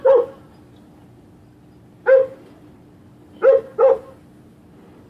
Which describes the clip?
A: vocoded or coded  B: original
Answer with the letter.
B